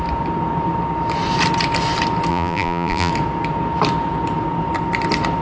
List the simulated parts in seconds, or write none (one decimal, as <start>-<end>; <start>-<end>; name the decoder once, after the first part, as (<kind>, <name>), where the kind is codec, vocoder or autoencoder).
2.3-3.1 (vocoder, BigVGAN v2)